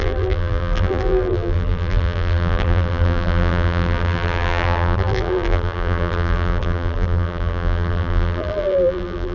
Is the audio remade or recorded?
remade